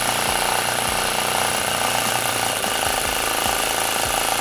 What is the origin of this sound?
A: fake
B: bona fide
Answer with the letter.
B